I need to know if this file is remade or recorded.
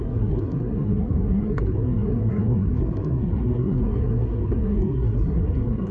remade